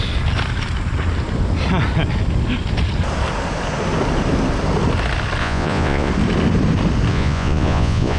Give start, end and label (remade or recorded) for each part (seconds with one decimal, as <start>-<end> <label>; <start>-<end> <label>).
0.0-5.4 recorded; 5.4-6.1 remade; 6.1-7.1 recorded; 7.1-8.2 remade